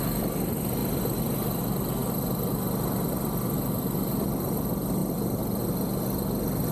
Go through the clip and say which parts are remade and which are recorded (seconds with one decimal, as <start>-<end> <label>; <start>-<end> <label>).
0.0-6.7 recorded